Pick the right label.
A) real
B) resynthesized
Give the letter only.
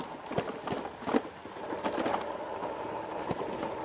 A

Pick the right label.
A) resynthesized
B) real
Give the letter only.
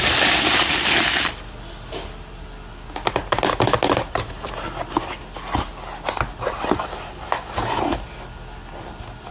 B